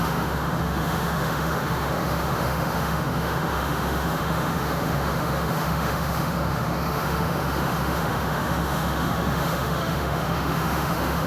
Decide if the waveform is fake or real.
fake